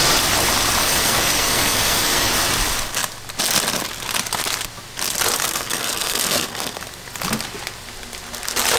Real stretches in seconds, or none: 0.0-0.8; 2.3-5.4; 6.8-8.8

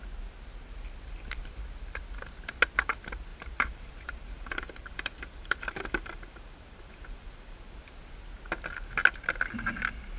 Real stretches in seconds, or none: 0.0-3.3; 7.7-10.2

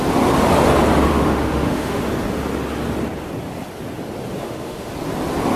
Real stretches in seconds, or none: 0.0-1.1; 2.0-4.4; 4.9-5.6